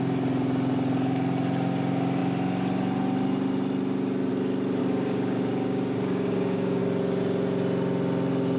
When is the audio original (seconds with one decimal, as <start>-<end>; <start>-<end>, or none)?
0.0-4.8; 6.8-8.6